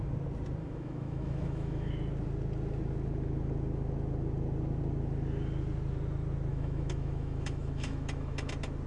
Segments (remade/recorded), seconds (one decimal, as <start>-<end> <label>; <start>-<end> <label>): 0.0-0.6 recorded; 0.6-1.9 remade; 1.9-6.5 recorded; 6.5-8.5 remade; 8.5-8.9 recorded